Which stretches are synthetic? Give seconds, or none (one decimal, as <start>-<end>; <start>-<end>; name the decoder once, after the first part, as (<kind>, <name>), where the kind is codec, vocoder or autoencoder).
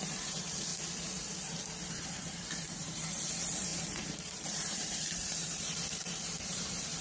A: 0.0-0.7 (vocoder, BigVGAN v2); 1.9-7.0